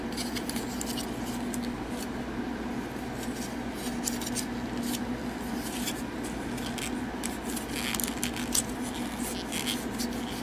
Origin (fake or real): real